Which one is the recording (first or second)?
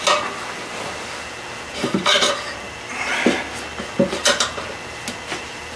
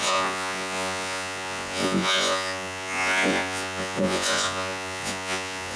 first